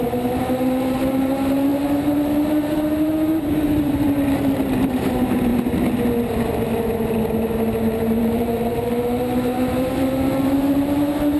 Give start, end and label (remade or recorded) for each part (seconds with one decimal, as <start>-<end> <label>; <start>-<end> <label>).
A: 0.0-5.5 remade; 5.5-8.2 recorded; 8.2-11.4 remade